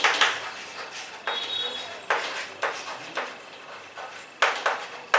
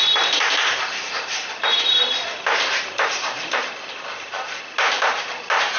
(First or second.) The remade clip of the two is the second